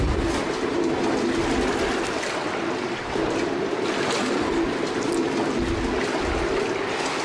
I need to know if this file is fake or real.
real